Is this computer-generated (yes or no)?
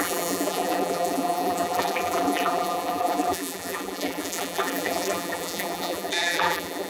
yes